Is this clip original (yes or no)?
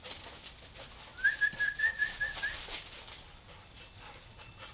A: yes